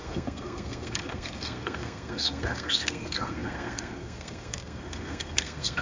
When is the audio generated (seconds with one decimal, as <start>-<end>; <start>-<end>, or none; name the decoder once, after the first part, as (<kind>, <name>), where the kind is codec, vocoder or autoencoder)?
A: 0.0-5.8 (codec, SNAC)